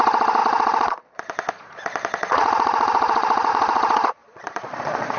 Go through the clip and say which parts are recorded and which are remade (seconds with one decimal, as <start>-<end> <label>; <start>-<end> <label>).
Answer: 0.0-5.2 remade